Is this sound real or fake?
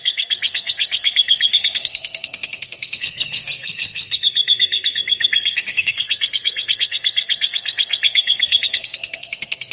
fake